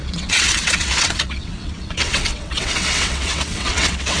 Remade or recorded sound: remade